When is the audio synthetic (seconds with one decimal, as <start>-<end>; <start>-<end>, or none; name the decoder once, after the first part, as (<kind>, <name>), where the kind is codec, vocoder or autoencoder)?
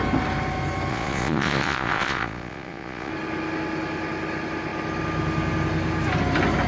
0.9-3.1 (vocoder, Vocos)